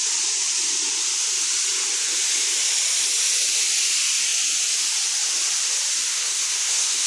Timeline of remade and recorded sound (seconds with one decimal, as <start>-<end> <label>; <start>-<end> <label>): 0.0-6.1 recorded; 6.1-7.1 remade